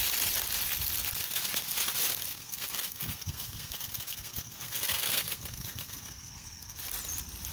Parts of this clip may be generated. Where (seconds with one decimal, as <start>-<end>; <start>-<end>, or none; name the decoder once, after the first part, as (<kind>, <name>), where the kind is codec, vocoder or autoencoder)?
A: 2.3-6.8 (codec, SNAC)